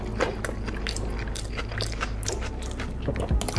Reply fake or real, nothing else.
real